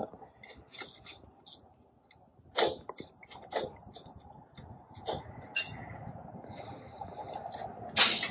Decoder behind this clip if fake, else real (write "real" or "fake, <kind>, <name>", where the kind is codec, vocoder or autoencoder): real